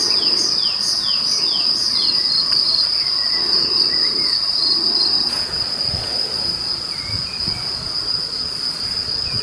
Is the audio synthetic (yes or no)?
yes